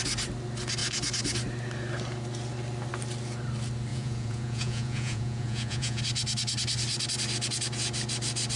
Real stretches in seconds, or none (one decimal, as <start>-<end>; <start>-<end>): 0.0-3.9; 6.0-8.6